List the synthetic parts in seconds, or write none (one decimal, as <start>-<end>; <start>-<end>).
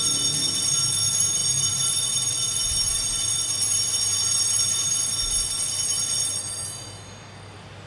none